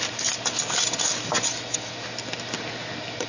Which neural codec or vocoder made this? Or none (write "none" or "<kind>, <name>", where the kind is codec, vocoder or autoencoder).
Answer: none